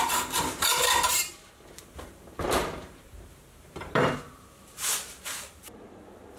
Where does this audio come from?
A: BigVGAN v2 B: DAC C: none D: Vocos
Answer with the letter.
A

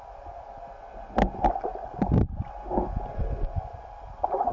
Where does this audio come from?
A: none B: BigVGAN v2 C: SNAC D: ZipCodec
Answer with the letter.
A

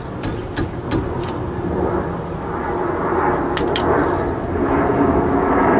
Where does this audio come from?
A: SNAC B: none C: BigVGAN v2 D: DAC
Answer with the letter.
B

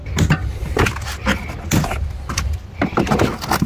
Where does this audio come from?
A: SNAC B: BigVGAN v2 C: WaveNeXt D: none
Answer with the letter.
D